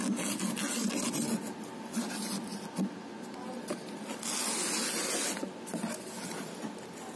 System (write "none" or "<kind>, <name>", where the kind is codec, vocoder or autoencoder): none